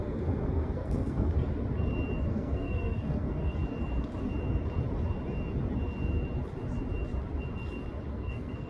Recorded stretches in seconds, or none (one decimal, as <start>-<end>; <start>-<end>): 1.3-2.2; 3.6-8.1